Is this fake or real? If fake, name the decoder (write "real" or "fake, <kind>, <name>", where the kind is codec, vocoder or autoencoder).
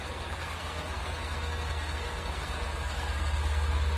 fake, codec, SNAC